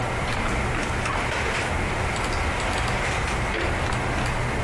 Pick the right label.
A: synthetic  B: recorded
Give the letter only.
B